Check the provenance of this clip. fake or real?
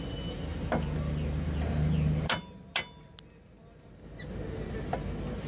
real